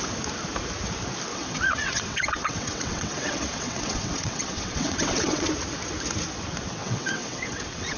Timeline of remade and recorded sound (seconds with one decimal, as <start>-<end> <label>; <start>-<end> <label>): 0.0-1.3 recorded; 1.3-5.5 remade; 5.5-6.8 recorded; 6.8-8.0 remade